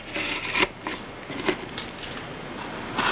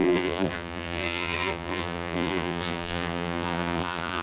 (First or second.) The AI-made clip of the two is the second